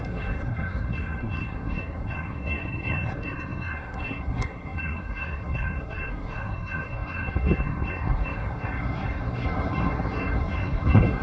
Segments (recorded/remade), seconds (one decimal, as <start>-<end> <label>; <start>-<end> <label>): 0.0-11.2 remade